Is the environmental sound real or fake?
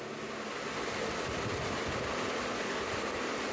real